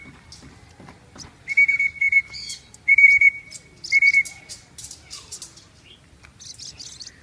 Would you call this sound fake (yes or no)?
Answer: no